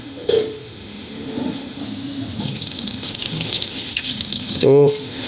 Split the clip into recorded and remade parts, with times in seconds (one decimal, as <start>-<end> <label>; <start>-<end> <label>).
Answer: 0.0-1.8 remade; 1.8-2.4 recorded; 2.4-5.3 remade